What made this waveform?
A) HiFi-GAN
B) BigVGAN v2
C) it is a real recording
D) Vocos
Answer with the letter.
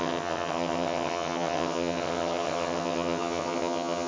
A